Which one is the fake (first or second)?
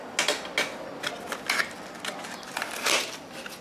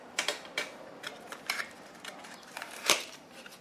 second